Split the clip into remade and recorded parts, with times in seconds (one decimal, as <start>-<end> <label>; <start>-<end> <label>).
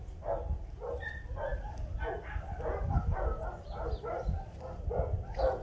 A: 0.0-5.6 recorded